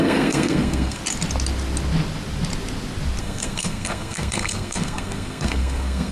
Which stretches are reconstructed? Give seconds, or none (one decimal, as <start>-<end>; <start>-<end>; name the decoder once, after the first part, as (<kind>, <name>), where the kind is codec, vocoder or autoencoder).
0.0-1.0 (codec, SNAC); 3.2-6.1